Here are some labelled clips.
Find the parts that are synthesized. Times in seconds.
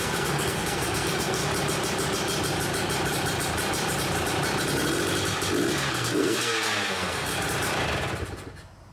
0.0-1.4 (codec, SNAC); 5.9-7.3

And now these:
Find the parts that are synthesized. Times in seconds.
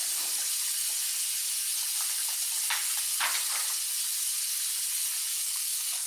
5.3-6.1 (codec, SNAC)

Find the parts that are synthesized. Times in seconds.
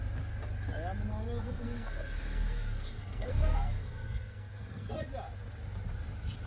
1.1-5.0 (codec, SNAC)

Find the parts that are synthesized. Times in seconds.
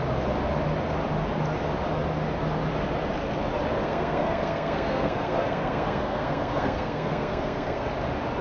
3.8-7.9 (codec, SNAC)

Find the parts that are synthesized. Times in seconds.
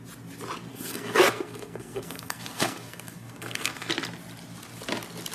0.7-3.9 (codec, SNAC)